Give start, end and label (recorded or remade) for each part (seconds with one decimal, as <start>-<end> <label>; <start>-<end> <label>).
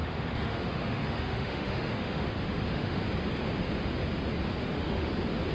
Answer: 0.0-3.0 remade; 3.0-4.6 recorded; 4.6-5.1 remade; 5.1-5.5 recorded